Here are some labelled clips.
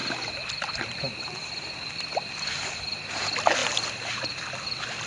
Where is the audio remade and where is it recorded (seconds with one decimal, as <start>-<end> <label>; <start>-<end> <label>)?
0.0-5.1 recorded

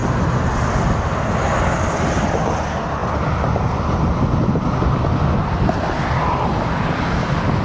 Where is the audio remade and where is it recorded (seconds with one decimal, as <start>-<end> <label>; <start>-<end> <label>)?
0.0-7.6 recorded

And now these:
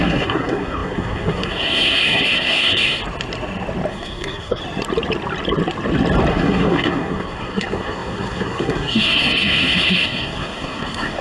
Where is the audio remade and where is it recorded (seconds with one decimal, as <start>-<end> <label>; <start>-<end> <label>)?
0.0-3.0 remade; 3.0-3.9 recorded; 3.9-4.6 remade; 4.6-6.3 recorded; 6.3-11.2 remade